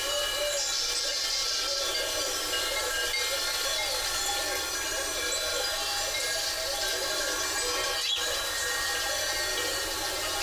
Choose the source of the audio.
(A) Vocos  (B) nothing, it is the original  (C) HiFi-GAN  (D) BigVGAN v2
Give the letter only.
B